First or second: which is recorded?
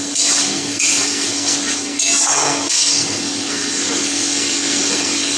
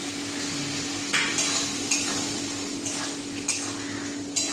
second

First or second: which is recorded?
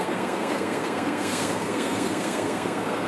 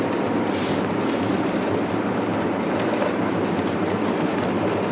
second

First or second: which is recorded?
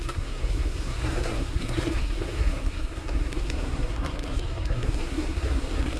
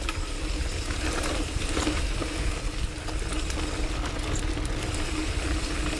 second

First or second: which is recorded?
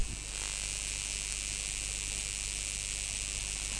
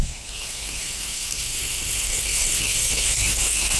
first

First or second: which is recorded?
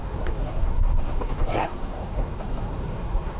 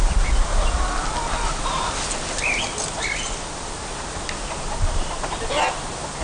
second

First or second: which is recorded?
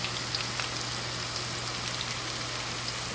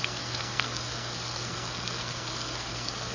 first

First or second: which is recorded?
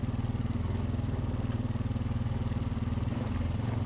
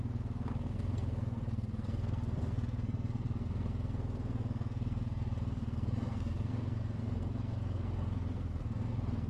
first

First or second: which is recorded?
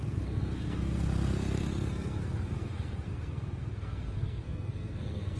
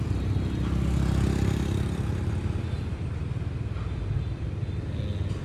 second